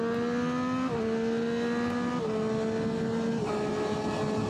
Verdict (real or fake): real